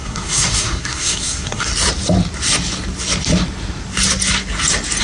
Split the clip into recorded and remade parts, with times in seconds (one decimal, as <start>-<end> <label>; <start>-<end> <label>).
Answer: 0.0-1.7 remade; 1.7-5.0 recorded